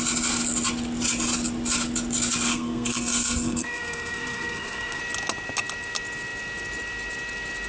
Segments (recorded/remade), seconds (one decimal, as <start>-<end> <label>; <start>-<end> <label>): 0.0-2.5 recorded; 2.5-5.0 remade; 5.0-7.7 recorded